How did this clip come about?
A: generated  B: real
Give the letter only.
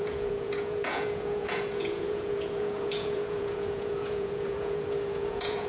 A